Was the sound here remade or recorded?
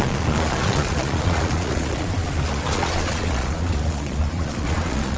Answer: remade